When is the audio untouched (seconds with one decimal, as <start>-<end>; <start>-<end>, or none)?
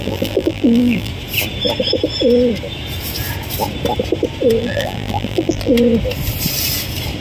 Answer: 1.1-4.6; 5.7-7.2